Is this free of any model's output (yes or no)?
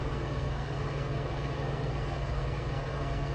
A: no